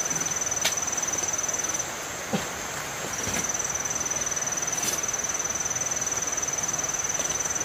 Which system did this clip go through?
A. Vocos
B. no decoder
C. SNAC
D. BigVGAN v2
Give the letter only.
B